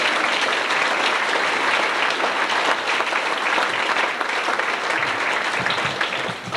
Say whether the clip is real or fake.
real